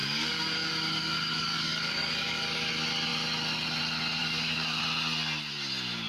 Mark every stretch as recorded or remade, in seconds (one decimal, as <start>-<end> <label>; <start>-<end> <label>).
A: 0.0-2.7 remade; 2.7-4.2 recorded; 4.2-4.8 remade; 4.8-6.1 recorded